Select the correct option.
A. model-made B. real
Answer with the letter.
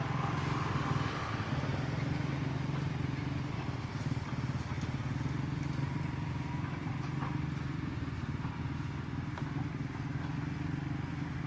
B